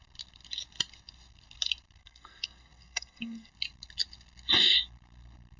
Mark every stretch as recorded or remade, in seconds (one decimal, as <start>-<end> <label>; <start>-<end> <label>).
0.0-2.0 recorded; 2.0-3.5 remade; 3.5-5.6 recorded